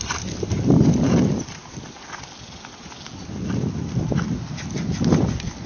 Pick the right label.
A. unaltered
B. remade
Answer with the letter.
A